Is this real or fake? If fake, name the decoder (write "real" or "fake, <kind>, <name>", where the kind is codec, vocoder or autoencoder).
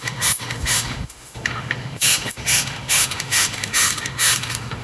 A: fake, autoencoder, DAC-VAE